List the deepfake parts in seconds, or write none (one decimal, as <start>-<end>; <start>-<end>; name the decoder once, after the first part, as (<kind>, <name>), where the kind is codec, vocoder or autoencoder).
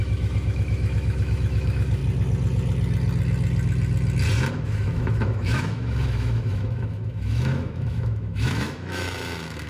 0.0-2.0 (autoencoder, DAC-VAE); 4.5-9.7